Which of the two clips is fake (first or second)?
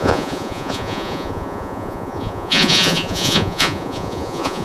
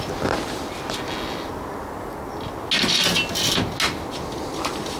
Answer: first